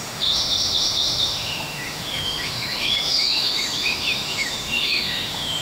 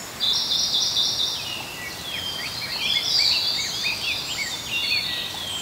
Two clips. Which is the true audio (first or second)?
second